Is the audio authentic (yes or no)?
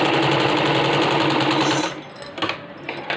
yes